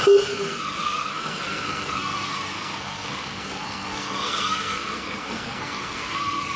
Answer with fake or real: fake